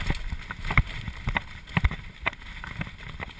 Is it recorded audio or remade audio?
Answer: recorded